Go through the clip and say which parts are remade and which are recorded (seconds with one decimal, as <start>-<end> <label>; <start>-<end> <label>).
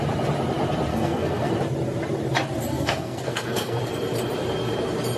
0.0-0.9 recorded; 0.9-1.5 remade; 1.5-2.7 recorded; 2.7-3.8 remade; 3.8-5.2 recorded